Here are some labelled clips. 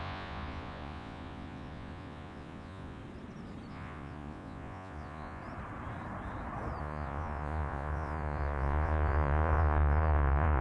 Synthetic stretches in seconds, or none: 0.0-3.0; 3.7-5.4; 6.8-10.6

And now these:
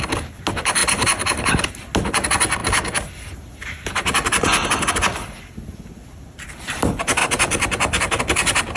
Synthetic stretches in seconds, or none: 7.2-8.2

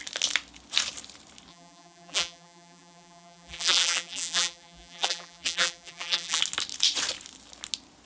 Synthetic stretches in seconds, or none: 1.5-6.4

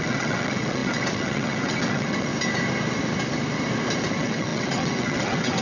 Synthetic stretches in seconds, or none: 0.0-2.3; 4.1-5.6

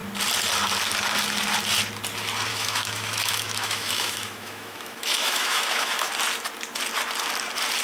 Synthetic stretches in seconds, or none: 2.5-6.1

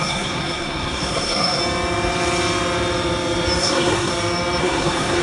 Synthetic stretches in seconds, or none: 0.0-1.6; 3.6-4.1; 4.6-5.2

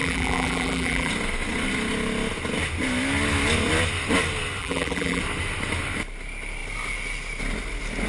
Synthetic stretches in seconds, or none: 0.0-1.1; 4.6-5.2